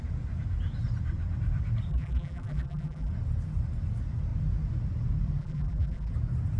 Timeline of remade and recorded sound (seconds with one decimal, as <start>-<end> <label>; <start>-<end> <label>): 0.0-1.9 recorded; 1.9-3.1 remade; 3.1-5.4 recorded; 5.4-6.1 remade; 6.1-6.6 recorded